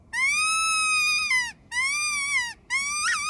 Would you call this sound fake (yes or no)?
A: no